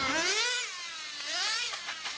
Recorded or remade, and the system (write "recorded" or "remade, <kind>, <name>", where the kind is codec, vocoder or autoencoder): recorded